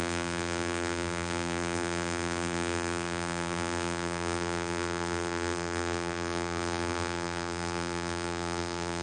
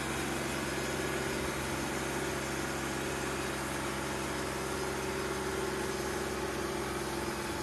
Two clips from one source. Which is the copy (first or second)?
first